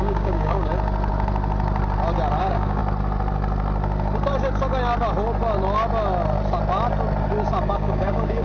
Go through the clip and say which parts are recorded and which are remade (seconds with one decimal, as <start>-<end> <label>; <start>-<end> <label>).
0.0-0.7 remade; 0.7-2.4 recorded; 2.4-2.8 remade; 2.8-7.7 recorded; 7.7-8.4 remade